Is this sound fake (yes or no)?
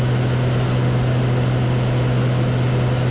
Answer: no